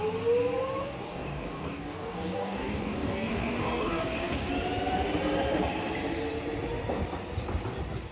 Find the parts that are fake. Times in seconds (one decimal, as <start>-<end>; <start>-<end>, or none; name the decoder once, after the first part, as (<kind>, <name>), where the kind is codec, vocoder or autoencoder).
0.8-4.5 (codec, DAC)